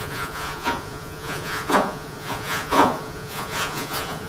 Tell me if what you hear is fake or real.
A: fake